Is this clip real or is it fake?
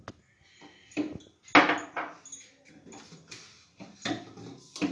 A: real